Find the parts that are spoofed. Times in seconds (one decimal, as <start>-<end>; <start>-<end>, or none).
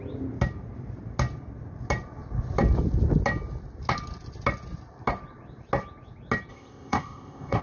6.5-7.6